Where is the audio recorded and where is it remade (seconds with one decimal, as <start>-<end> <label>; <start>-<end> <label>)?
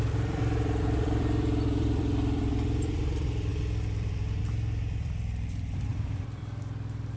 0.0-7.2 remade